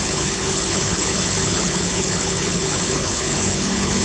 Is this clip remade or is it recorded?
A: remade